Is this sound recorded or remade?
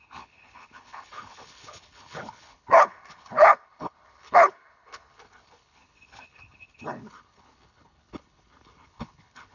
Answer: remade